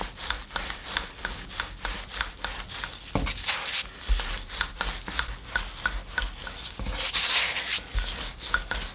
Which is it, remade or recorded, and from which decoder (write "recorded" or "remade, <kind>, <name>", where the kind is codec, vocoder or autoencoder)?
recorded